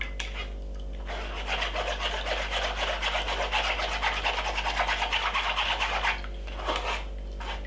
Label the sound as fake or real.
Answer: real